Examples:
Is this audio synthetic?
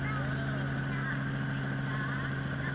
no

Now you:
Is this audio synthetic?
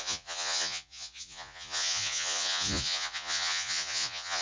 yes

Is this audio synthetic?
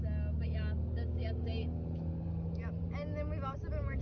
no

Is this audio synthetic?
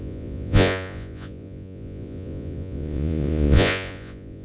yes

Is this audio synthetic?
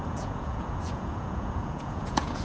yes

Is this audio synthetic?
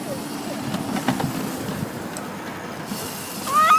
no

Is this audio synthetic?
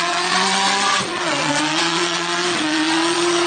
yes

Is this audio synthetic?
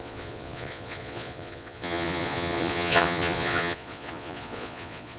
yes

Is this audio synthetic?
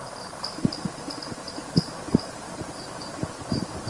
no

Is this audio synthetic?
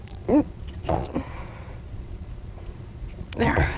yes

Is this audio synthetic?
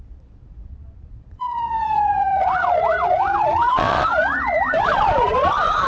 yes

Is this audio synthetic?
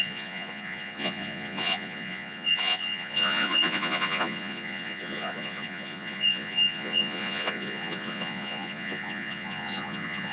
yes